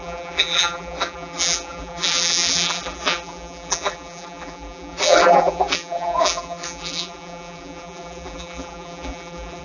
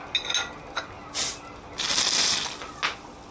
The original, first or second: second